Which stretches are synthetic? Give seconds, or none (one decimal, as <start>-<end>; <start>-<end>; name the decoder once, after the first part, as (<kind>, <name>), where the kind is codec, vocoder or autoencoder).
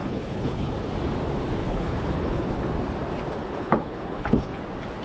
0.0-0.7 (codec, HILCodec); 1.6-2.5; 3.4-4.6